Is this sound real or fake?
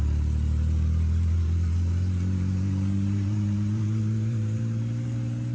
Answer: fake